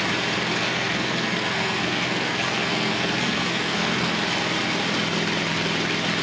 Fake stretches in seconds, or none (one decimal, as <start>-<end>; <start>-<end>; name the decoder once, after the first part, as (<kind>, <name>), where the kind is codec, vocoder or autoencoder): 0.6-4.1 (codec, SNAC)